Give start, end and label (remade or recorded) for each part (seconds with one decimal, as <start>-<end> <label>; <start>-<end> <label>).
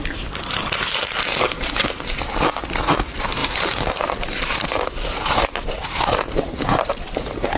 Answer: 0.0-3.4 recorded; 3.4-7.6 remade